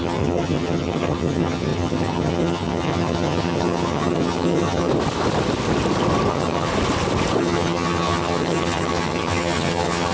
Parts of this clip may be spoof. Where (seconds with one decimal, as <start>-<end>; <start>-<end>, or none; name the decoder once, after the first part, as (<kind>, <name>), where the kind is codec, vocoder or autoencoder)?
0.0-4.9 (vocoder, HiFi-GAN); 6.3-6.7; 7.4-10.1